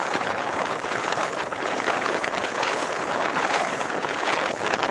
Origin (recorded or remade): remade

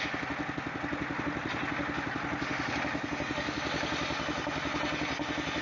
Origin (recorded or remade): recorded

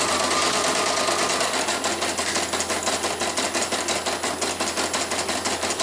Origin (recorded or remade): recorded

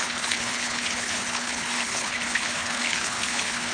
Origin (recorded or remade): remade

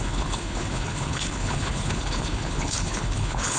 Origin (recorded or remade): remade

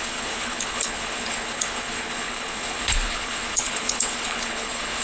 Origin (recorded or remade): remade